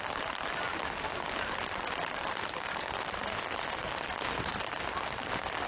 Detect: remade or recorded recorded